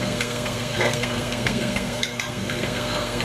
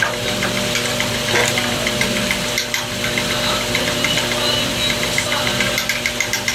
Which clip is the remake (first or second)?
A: first